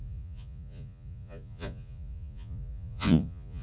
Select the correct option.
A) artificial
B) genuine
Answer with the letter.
A